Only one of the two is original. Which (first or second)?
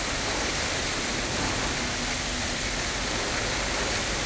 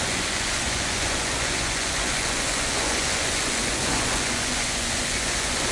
first